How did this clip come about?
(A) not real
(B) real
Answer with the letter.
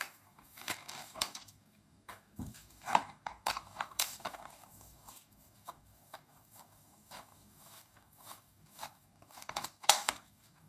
A